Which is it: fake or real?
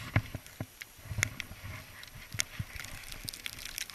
real